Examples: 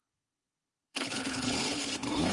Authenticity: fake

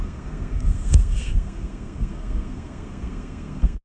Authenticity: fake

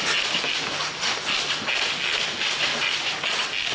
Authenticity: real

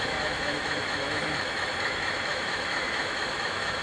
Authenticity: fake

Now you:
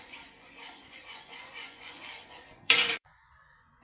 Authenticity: fake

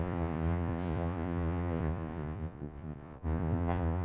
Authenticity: fake